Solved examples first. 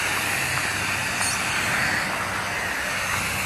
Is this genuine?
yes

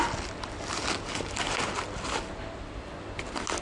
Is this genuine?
yes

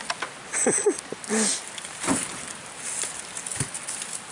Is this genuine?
yes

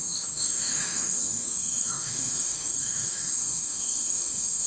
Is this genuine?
no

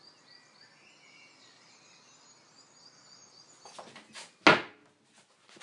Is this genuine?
yes